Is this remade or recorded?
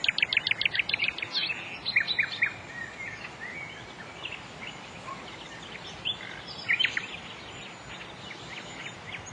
recorded